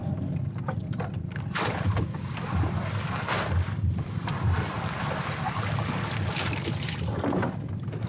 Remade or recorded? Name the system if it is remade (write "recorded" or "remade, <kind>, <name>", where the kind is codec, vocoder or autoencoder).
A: recorded